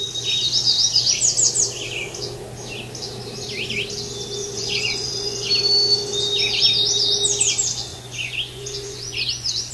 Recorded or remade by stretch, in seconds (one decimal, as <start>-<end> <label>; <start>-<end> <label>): 0.0-4.4 recorded; 4.4-5.5 remade; 5.5-7.9 recorded; 7.9-9.7 remade